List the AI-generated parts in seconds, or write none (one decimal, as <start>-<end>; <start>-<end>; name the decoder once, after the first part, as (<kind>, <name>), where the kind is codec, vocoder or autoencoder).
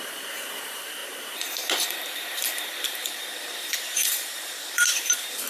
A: 0.0-5.5 (vocoder, BigVGAN v2)